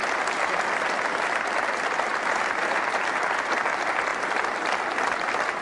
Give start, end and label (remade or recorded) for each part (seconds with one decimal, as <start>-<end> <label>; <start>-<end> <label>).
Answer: 0.0-5.6 recorded